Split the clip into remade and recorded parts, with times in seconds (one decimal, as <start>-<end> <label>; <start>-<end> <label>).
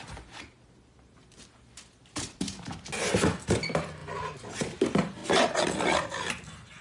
0.0-6.8 recorded